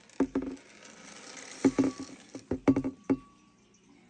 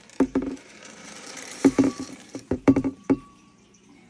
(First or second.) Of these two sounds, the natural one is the first